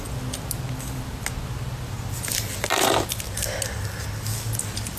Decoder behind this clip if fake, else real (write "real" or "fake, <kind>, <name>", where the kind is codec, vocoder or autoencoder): real